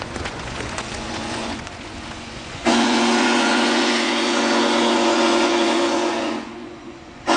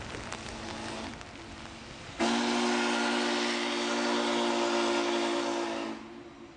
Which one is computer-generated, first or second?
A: first